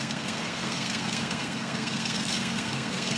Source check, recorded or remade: remade